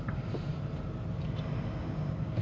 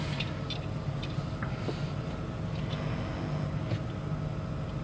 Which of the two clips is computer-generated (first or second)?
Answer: first